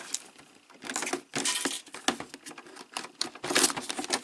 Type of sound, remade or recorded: recorded